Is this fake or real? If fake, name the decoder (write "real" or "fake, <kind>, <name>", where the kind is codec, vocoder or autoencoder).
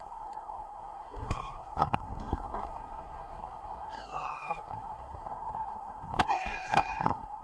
fake, codec, SNAC